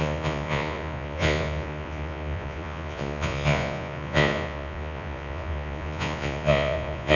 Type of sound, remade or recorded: remade